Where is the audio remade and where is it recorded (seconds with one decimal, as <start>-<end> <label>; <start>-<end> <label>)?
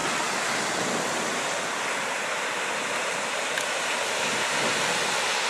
0.0-5.5 recorded